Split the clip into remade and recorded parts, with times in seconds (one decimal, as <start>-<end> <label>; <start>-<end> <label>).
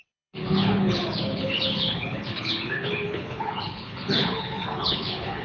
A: 0.0-5.4 remade